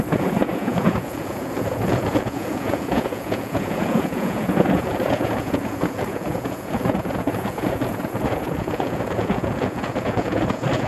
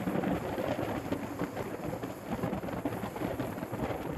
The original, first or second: second